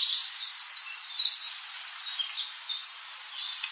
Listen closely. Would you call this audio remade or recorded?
recorded